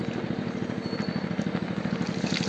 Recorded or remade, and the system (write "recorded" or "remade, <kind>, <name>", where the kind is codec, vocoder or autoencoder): recorded